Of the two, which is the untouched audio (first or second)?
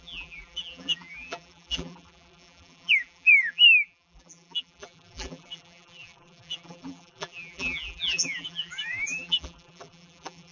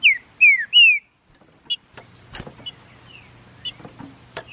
second